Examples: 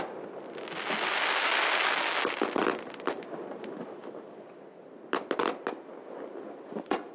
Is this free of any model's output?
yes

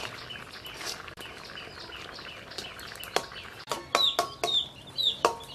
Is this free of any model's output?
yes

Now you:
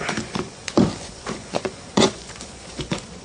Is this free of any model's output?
no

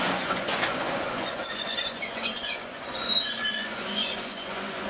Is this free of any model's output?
no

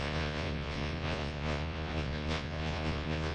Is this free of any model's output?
no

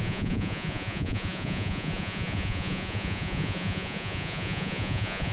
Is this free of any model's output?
no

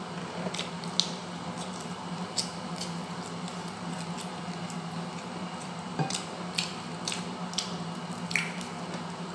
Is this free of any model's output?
yes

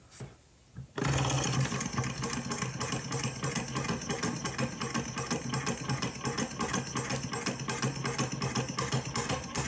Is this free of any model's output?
yes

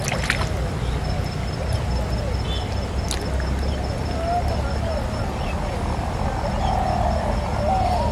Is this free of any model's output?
yes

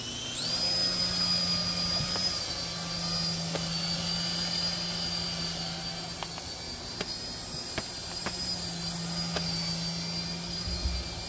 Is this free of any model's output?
yes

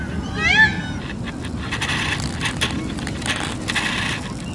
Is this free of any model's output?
yes